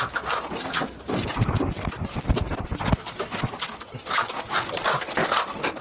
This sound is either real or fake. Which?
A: real